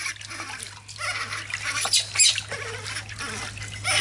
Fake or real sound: real